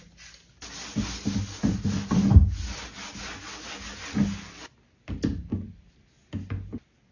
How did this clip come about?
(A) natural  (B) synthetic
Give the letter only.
A